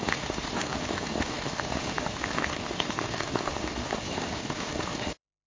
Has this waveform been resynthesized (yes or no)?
yes